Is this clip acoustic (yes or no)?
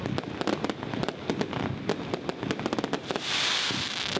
yes